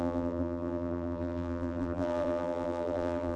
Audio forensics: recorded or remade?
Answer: remade